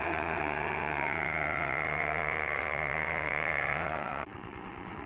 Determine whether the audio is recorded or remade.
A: remade